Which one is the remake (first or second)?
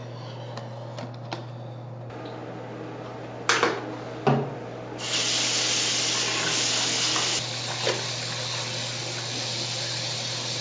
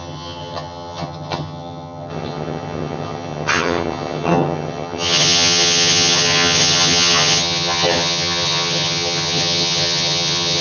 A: second